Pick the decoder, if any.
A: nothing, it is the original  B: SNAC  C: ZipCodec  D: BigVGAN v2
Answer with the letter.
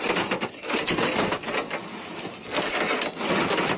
A